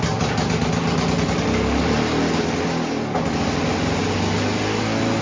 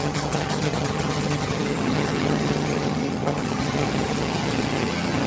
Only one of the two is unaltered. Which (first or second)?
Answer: first